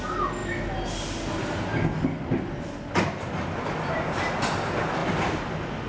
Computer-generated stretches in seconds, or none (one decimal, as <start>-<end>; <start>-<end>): none